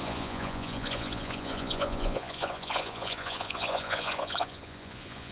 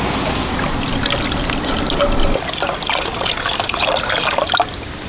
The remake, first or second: first